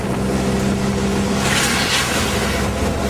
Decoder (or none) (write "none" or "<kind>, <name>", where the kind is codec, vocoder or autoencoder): none